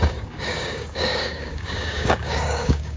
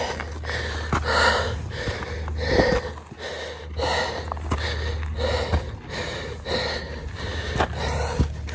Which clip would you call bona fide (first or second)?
second